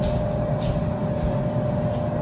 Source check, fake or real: real